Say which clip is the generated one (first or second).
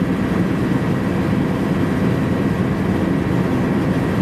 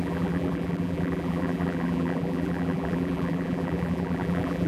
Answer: second